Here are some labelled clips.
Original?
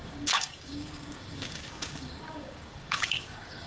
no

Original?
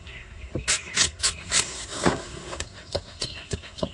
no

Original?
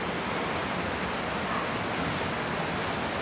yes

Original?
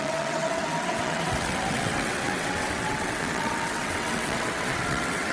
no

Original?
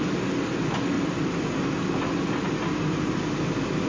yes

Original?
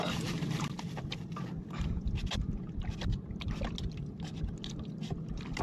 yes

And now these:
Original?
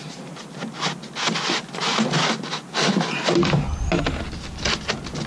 yes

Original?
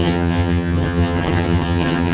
no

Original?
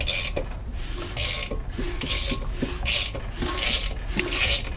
yes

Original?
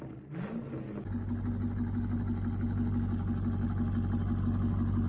yes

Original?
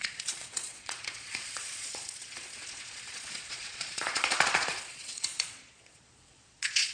no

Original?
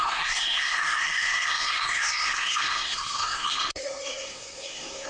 no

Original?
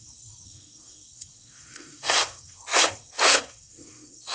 no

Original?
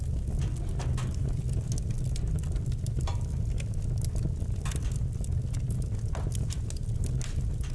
yes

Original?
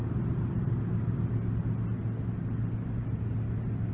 yes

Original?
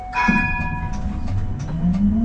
yes